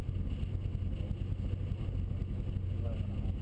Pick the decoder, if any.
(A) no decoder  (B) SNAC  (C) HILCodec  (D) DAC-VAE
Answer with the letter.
A